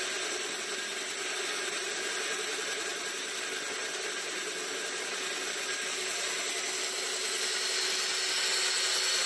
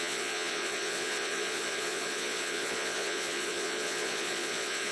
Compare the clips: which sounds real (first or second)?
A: first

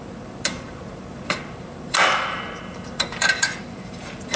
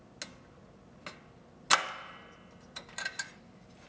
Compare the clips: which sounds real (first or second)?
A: second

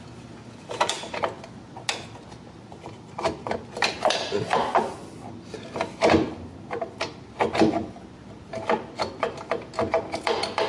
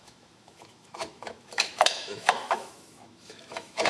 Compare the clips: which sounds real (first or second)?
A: first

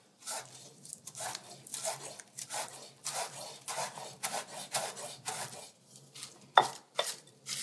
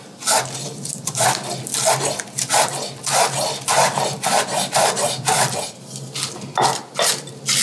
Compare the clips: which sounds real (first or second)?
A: second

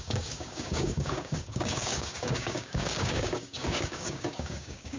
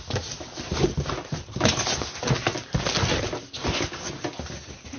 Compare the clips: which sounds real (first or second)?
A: second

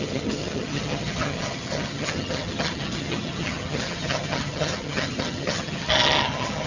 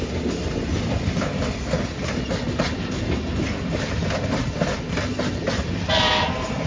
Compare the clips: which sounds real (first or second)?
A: second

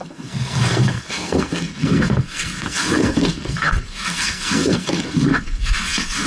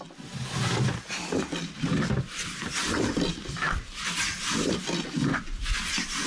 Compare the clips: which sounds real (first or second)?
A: second